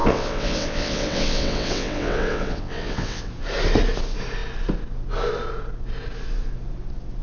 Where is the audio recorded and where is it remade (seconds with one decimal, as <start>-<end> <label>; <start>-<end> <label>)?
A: 0.0-3.3 remade; 3.3-7.2 recorded